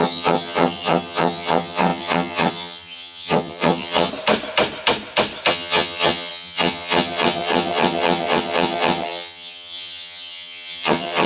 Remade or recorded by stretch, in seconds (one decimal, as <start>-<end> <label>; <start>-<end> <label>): 0.0-4.1 remade; 4.1-5.5 recorded; 5.5-11.3 remade